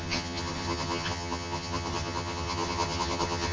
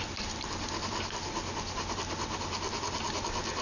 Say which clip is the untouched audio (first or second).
second